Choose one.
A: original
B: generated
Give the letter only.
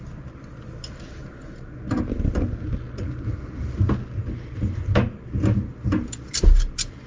A